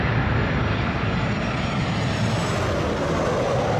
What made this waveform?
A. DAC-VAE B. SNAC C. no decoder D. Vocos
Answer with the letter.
C